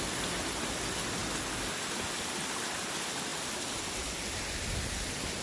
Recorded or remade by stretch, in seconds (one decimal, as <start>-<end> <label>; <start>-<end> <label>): 0.0-5.4 recorded